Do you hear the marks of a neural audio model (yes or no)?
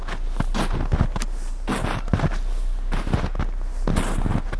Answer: no